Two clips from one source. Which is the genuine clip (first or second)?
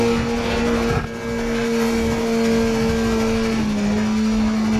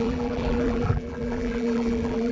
first